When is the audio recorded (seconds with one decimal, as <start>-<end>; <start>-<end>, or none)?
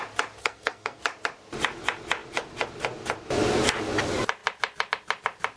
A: 0.0-0.4; 1.0-5.6